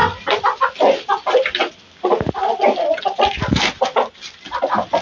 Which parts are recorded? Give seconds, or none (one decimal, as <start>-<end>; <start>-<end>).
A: 0.0-5.0